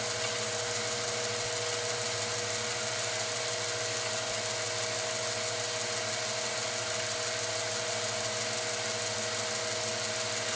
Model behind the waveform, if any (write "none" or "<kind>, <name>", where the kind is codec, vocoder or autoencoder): none